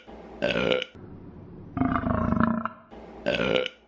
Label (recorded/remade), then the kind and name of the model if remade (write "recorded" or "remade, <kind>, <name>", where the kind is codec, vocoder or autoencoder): recorded